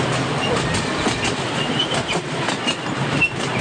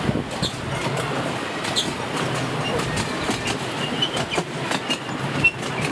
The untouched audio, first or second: second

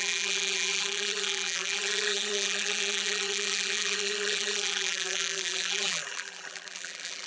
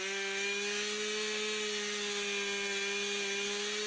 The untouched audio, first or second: second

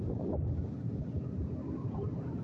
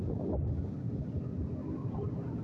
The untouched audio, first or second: second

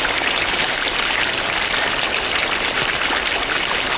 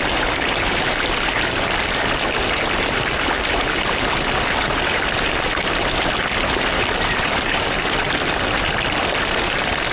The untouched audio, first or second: first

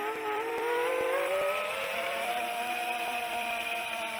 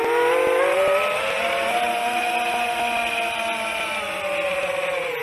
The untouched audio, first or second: second